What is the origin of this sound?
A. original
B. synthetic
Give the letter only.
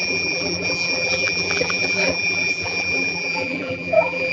B